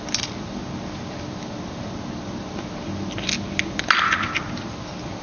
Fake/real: real